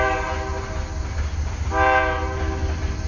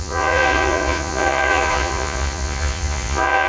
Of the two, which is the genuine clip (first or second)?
first